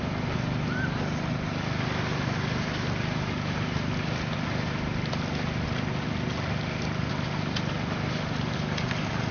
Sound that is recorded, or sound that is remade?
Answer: recorded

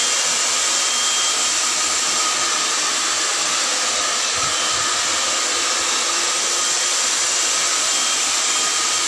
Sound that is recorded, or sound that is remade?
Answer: recorded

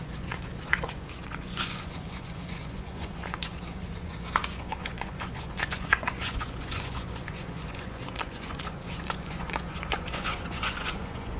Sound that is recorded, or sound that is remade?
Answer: remade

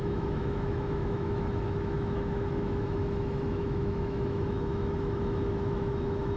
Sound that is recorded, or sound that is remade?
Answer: remade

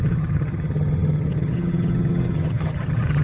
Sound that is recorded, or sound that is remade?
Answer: remade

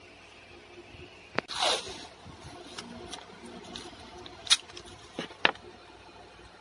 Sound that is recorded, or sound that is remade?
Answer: recorded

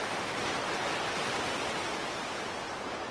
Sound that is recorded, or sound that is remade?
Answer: recorded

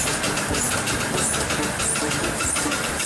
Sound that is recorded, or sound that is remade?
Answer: remade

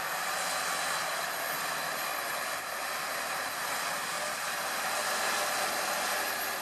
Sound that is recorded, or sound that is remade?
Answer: recorded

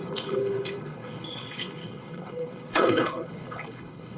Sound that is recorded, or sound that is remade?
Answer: remade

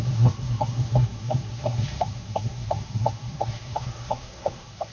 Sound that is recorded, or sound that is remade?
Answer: remade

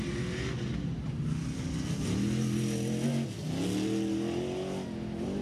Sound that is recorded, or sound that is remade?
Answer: recorded